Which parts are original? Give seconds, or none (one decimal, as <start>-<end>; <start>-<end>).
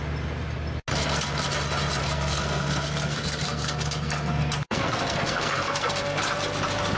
0.0-0.9; 1.5-2.0; 6.2-7.0